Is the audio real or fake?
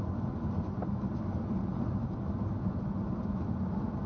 real